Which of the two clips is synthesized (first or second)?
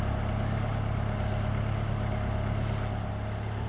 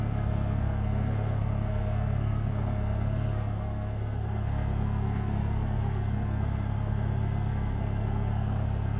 second